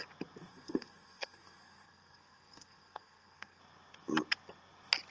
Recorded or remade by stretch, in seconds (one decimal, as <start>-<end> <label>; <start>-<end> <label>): 0.0-0.5 recorded; 0.5-3.6 remade; 3.6-5.1 recorded